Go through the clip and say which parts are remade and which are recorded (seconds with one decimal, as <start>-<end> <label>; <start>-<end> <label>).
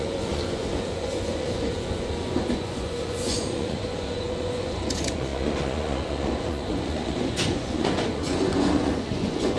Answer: 0.0-9.6 remade